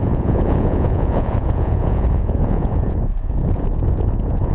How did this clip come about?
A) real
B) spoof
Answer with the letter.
B